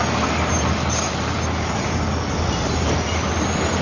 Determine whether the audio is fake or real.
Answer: real